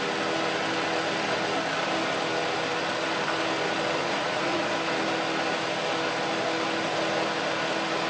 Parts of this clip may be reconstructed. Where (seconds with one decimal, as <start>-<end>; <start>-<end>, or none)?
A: 4.0-4.7